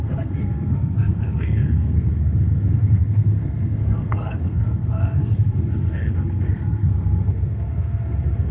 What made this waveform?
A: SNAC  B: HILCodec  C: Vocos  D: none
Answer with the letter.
A